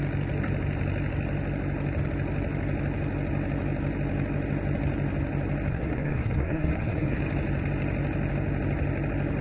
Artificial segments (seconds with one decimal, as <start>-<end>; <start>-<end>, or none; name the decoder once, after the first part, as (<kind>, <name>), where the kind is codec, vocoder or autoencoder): 5.7-7.2 (codec, SNAC)